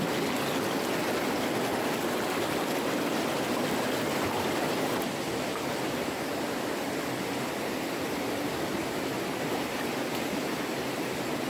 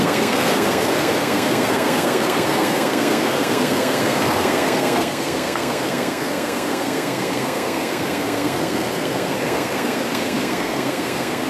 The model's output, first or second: second